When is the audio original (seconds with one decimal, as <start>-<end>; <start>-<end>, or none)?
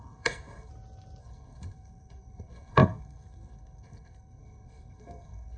0.7-1.2